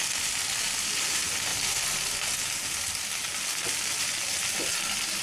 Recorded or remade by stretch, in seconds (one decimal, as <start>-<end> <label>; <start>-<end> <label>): 0.0-5.2 recorded